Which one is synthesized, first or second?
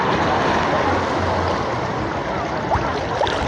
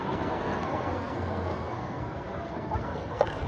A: second